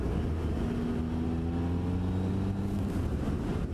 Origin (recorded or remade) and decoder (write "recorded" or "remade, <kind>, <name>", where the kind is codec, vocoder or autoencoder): recorded